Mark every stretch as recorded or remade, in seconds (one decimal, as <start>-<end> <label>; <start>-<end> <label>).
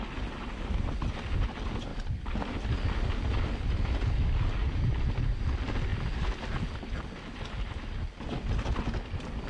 0.0-1.9 recorded; 1.9-3.9 remade; 3.9-9.5 recorded